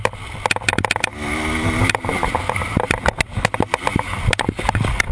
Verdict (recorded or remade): recorded